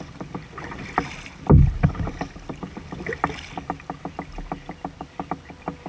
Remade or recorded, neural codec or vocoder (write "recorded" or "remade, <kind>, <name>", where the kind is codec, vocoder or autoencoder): remade, vocoder, BigVGAN v2